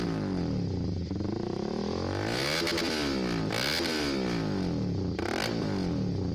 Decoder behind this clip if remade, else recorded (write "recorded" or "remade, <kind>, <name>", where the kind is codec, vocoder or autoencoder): recorded